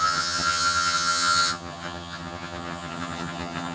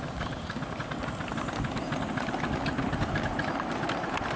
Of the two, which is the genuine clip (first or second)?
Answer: second